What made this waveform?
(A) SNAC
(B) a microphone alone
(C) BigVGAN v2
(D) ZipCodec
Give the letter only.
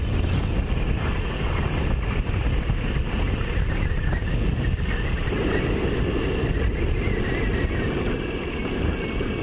B